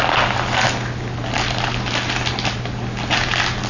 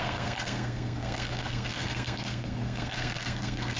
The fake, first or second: second